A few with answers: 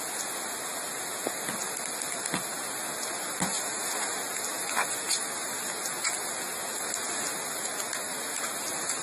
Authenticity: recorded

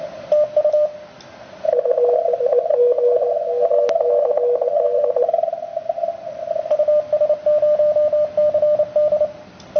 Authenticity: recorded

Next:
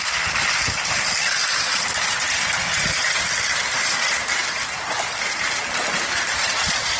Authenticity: recorded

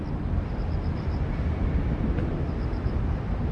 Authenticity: recorded